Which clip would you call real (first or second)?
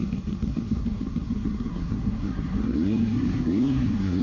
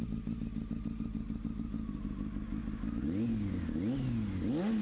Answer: second